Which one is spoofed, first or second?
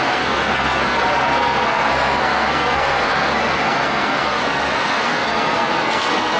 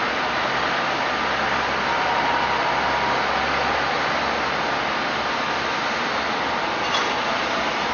first